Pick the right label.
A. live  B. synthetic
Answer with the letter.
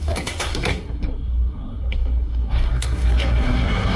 B